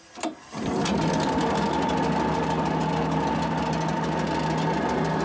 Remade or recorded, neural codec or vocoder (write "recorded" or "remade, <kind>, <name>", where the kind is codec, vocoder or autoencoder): recorded